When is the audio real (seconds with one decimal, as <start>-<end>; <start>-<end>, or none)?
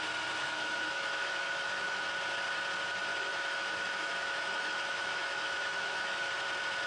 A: 0.0-0.4; 2.1-3.1; 6.3-6.9